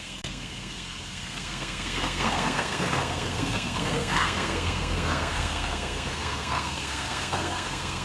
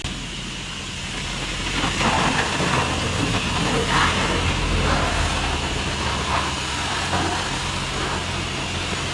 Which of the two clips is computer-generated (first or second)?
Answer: first